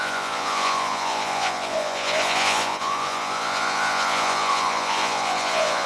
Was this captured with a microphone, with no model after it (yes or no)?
no